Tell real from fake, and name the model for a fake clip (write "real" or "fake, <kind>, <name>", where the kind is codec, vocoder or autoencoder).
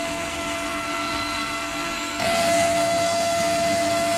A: fake, codec, SNAC